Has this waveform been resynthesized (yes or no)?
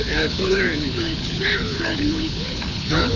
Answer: yes